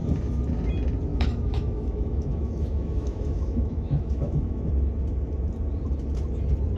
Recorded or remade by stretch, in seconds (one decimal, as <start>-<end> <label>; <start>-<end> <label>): 0.0-1.1 recorded; 1.1-4.7 remade; 4.7-6.8 recorded